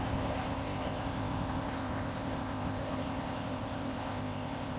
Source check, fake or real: fake